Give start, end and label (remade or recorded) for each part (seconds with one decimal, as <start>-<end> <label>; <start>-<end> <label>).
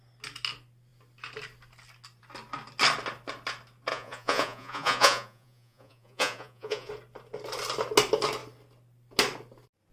0.0-3.9 recorded; 3.9-6.9 remade; 6.9-9.9 recorded